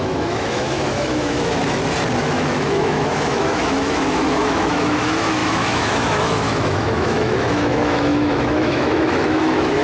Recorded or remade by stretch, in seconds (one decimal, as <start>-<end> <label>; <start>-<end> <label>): 0.0-1.6 remade; 1.6-2.2 recorded; 2.2-9.8 remade